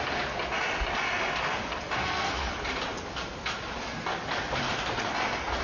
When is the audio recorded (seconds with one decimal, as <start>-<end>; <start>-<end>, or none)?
0.0-2.0; 2.5-5.6